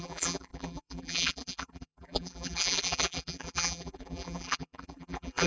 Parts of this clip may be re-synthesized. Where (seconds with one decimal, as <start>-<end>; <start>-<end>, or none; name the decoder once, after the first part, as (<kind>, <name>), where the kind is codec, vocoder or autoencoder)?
0.0-5.5 (vocoder, BigVGAN v2)